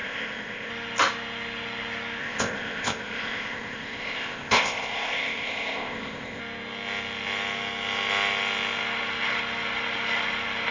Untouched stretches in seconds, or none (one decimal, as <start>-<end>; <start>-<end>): 0.7-2.2; 6.4-10.7